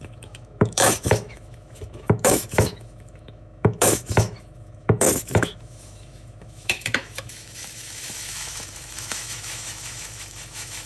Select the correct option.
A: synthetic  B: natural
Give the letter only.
A